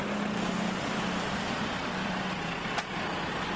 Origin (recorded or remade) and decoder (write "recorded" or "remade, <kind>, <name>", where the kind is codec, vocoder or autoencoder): recorded